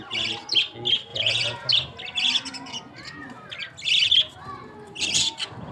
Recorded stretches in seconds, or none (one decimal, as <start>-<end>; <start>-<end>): 0.0-1.1; 1.7-5.7